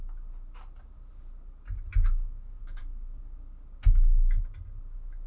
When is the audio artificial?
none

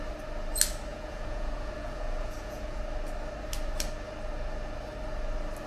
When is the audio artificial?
0.9-2.8 (vocoder, Vocos)

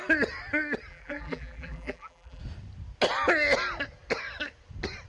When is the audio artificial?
0.9-2.4 (vocoder, BigVGAN v2)

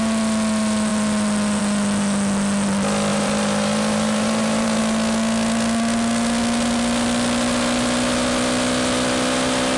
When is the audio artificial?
3.1-4.8 (vocoder, BigVGAN v2)